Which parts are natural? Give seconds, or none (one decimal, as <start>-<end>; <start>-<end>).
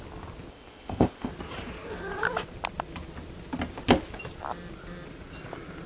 0.0-0.5; 1.3-5.9